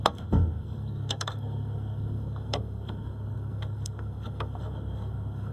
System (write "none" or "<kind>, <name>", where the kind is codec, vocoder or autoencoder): codec, SNAC